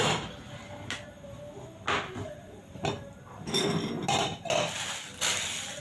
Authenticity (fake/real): real